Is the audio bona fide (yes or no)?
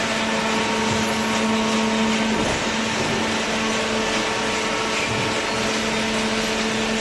yes